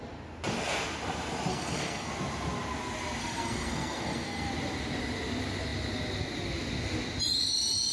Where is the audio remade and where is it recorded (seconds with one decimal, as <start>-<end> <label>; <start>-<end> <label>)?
0.0-1.5 recorded; 1.5-2.1 remade; 2.1-3.2 recorded; 3.2-4.5 remade; 4.5-7.9 recorded